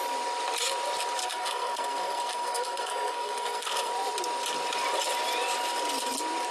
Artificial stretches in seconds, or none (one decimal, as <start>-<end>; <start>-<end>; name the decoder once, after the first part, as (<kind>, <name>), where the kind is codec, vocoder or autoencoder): 1.2-3.9 (codec, SNAC)